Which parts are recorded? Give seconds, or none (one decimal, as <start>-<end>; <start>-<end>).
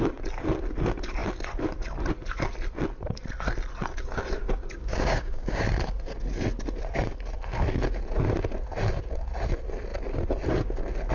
0.0-4.8; 5.6-11.1